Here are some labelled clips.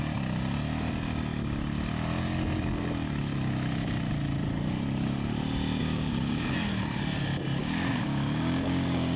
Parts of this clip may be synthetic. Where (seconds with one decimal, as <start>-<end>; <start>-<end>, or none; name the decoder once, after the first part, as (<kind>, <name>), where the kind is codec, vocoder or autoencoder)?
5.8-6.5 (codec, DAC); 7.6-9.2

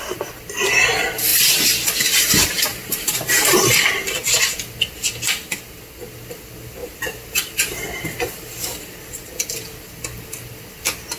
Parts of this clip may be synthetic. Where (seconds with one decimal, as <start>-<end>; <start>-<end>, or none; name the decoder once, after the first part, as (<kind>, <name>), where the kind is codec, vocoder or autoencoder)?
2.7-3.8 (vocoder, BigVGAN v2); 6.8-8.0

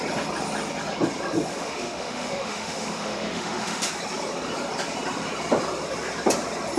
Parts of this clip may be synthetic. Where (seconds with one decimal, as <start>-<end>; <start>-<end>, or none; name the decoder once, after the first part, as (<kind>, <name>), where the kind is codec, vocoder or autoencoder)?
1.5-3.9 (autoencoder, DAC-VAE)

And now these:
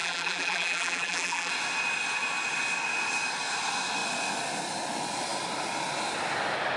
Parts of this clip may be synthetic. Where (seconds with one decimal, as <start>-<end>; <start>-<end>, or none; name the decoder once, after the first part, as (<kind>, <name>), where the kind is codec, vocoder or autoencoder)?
0.0-1.5 (vocoder, BigVGAN v2)

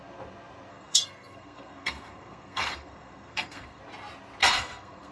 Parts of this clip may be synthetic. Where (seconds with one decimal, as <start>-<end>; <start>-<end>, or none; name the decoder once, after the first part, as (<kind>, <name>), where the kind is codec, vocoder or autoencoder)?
0.7-3.8 (codec, SNAC); 4.4-5.1